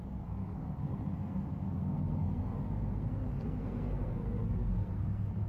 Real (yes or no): no